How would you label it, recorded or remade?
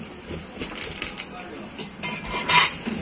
recorded